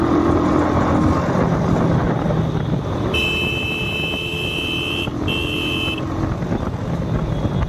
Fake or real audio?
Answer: real